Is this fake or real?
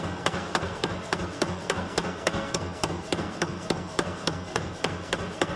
fake